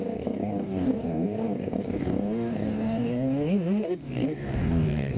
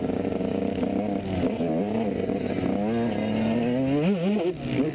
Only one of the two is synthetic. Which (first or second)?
first